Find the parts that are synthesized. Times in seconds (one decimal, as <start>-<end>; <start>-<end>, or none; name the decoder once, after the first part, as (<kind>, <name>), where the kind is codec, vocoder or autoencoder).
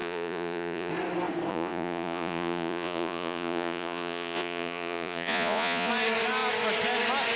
0.0-0.9 (vocoder, Vocos); 1.5-5.9